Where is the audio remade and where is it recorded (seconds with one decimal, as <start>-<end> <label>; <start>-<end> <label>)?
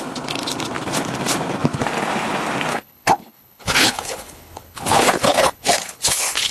0.0-2.7 recorded; 2.7-6.5 remade